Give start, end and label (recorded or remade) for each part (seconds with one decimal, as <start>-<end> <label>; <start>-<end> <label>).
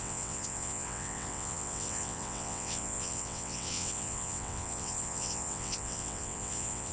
0.0-6.9 remade